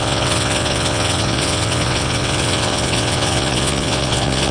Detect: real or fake fake